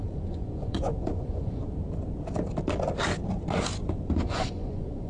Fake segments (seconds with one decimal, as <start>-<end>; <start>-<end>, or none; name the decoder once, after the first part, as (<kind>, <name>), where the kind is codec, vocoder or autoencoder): 0.0-1.6 (vocoder, Vocos); 4.1-5.1